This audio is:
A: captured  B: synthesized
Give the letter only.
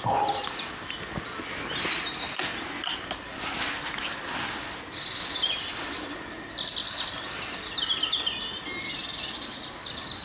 A